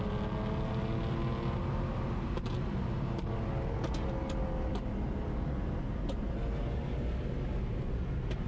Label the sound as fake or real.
real